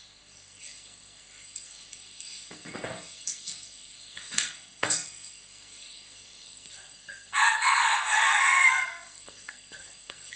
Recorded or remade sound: remade